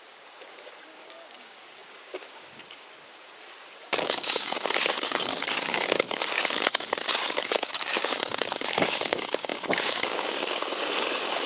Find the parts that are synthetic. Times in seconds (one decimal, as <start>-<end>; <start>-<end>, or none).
0.0-11.5